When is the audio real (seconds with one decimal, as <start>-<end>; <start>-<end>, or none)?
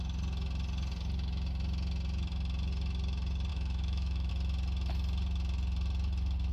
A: 0.0-3.5; 4.3-6.5